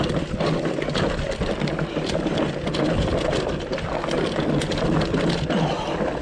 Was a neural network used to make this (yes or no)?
no